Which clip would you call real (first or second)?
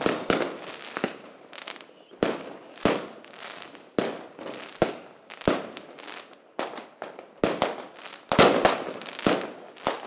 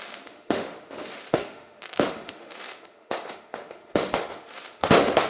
first